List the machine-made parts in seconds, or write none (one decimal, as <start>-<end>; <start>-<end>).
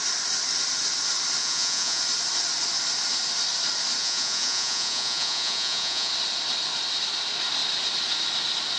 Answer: 1.4-2.0; 4.0-6.1